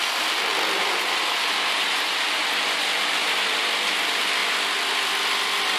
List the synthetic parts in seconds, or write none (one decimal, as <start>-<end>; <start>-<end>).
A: none